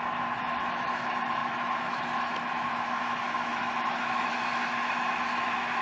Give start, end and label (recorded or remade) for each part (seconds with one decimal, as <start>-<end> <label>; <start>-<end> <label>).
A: 0.0-5.8 remade